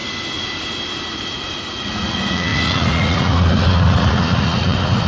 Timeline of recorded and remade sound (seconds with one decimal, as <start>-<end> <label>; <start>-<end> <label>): 0.0-1.1 recorded; 1.1-5.1 remade